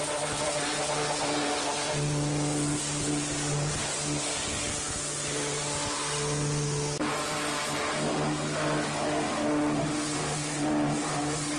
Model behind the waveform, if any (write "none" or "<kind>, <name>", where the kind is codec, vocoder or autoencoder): none